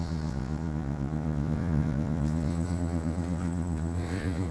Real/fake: fake